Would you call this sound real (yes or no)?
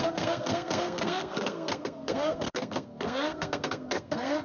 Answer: no